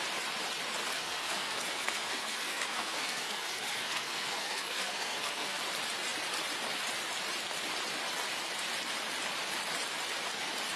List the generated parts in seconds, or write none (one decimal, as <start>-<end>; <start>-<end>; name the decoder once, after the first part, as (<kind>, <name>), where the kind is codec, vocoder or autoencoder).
0.9-5.6 (codec, SNAC)